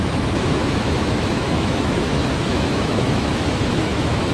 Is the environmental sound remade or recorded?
remade